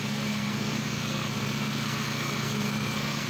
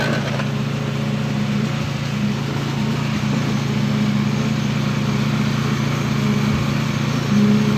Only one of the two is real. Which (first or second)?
second